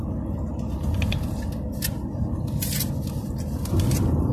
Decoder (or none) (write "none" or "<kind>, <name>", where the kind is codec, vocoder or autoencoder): none